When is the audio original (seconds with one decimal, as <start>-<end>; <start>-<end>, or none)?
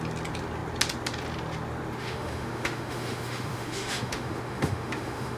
0.0-2.0